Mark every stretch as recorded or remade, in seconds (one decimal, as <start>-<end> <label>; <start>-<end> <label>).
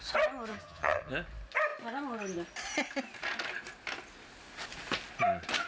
0.0-0.5 recorded; 0.5-1.1 remade; 1.1-5.7 recorded